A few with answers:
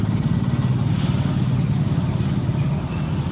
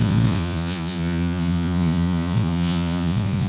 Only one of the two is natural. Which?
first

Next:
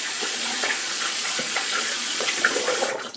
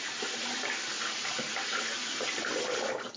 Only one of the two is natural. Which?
second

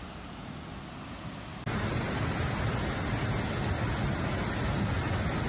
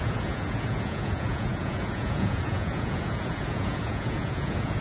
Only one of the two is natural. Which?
first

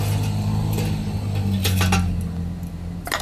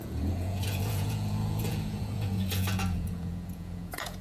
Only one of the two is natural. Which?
first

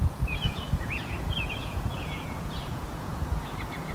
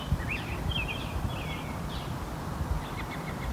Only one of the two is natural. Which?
second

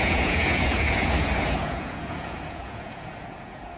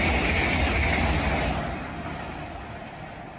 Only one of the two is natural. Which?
second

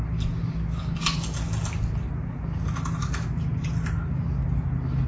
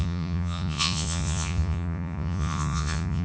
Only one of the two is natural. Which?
first